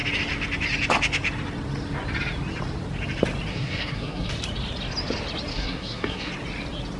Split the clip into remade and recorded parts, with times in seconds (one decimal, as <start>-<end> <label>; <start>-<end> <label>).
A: 0.0-3.5 recorded; 3.5-4.3 remade; 4.3-5.5 recorded; 5.5-6.3 remade; 6.3-7.0 recorded